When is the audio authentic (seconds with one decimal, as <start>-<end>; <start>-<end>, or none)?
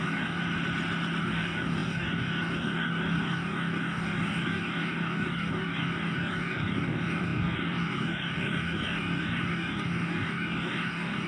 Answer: 0.4-1.2